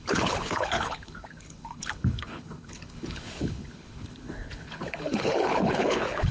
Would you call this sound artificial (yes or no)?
yes